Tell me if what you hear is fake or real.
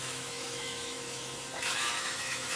fake